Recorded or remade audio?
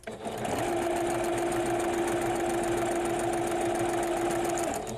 recorded